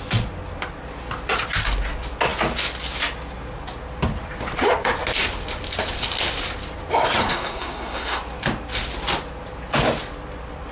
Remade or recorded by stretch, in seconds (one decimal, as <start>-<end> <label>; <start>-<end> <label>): 0.0-7.2 recorded; 7.2-8.2 remade; 8.2-10.7 recorded